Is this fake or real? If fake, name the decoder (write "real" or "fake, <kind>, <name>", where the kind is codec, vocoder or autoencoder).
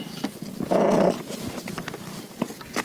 real